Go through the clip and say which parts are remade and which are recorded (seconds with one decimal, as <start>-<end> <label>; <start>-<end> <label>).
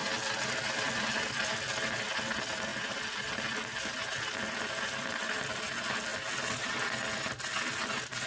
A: 0.0-8.3 recorded